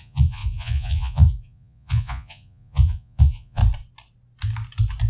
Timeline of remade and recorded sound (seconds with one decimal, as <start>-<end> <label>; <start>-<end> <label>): 0.0-3.6 remade; 3.6-5.1 recorded